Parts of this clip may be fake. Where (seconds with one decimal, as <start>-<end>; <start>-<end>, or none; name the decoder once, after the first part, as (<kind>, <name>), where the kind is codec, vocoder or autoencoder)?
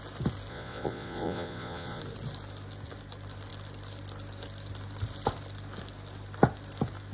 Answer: 0.5-2.0 (vocoder, Vocos)